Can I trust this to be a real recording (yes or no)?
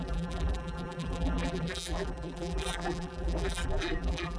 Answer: no